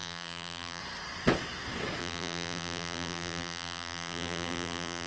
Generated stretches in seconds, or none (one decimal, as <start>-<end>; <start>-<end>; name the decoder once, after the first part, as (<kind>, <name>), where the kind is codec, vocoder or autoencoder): 0.0-0.8 (vocoder, BigVGAN v2); 2.0-5.1